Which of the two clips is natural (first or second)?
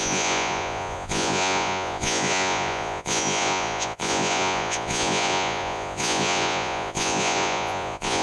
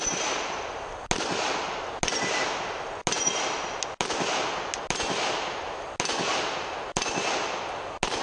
second